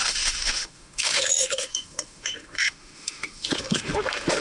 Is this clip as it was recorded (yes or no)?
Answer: no